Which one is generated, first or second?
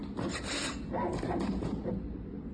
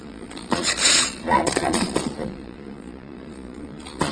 second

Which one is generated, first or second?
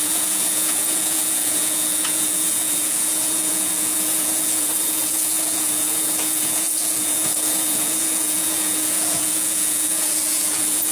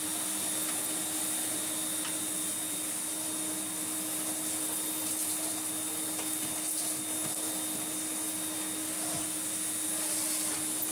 first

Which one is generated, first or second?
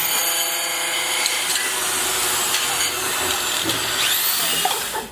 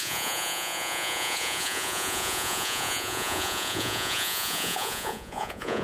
second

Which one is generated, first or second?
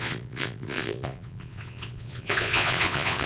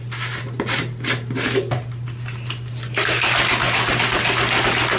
first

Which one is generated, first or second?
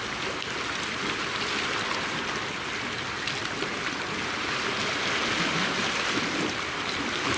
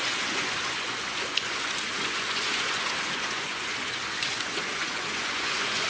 second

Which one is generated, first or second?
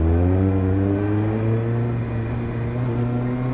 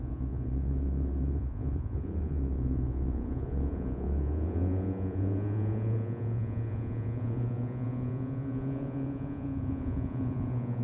second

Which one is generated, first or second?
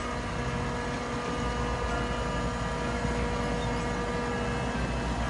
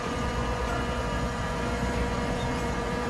second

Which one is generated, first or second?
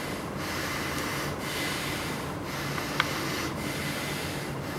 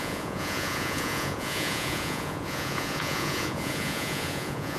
second